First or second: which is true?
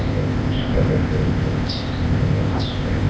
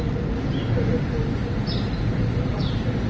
second